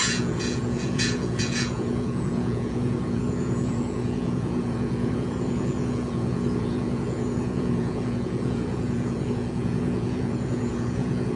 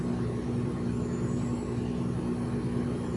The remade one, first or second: first